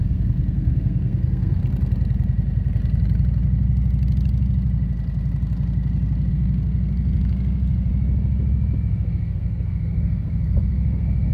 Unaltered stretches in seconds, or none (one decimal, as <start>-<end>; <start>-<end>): 1.6-6.3; 7.9-8.9